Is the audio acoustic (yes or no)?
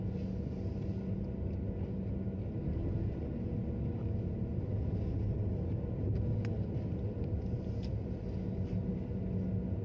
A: yes